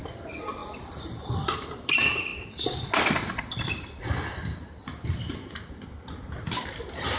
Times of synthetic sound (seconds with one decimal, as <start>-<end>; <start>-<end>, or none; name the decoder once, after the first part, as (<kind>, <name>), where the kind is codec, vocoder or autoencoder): none